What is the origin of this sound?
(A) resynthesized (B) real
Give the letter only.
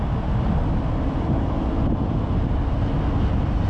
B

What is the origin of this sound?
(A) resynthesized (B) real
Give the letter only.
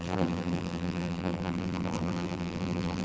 A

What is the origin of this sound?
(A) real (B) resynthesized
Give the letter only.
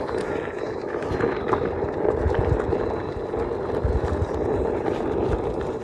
B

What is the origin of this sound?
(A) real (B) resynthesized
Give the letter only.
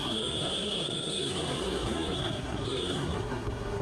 B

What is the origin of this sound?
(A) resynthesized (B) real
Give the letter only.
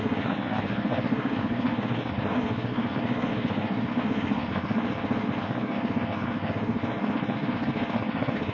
A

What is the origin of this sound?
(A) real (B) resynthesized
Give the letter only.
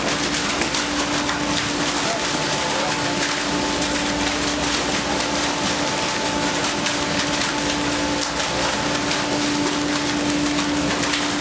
A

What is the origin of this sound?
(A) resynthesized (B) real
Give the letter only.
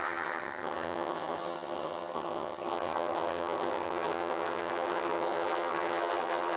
A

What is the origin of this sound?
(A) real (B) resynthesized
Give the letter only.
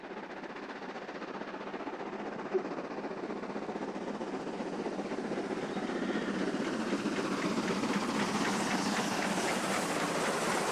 A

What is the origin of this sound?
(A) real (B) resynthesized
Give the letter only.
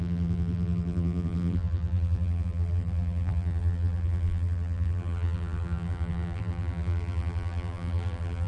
B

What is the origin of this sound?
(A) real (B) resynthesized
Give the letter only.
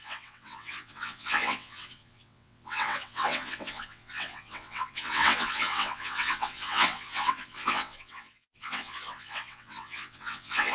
B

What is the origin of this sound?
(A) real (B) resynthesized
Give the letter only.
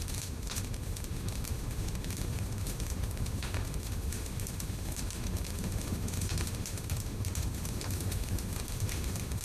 B